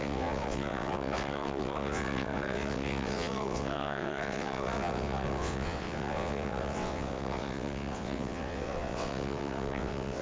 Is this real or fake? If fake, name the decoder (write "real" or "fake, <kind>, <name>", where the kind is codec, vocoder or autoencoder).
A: fake, vocoder, WaveNeXt